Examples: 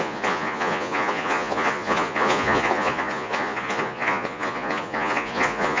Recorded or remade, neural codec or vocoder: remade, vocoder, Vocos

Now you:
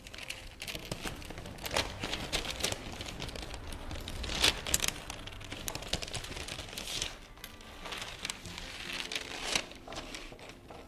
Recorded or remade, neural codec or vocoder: recorded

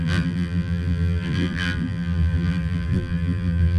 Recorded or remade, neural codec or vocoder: remade, vocoder, BigVGAN v2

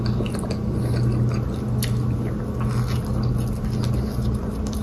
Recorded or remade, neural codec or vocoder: recorded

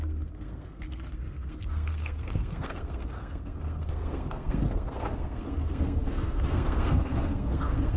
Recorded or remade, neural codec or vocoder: remade, codec, SNAC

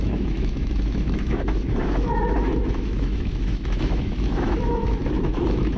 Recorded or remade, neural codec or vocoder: remade, autoencoder, DAC-VAE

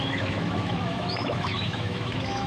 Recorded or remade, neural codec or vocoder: remade, autoencoder, DAC-VAE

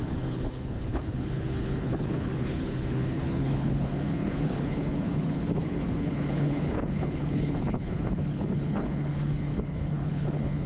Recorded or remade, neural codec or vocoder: remade, codec, HILCodec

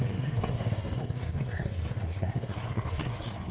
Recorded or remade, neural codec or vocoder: remade, codec, SNAC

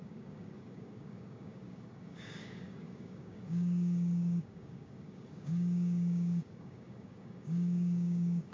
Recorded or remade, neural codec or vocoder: remade, codec, DAC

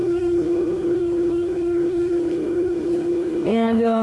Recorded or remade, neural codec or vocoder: remade, codec, SNAC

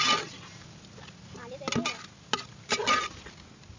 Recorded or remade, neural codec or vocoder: recorded